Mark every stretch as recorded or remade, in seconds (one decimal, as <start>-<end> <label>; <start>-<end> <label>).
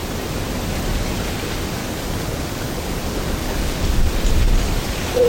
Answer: 0.0-1.8 recorded; 1.8-3.8 remade; 3.8-5.3 recorded